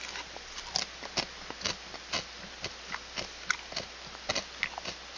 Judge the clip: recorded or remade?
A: recorded